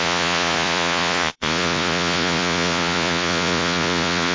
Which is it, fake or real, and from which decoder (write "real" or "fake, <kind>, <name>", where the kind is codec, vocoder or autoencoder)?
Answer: fake, vocoder, Vocos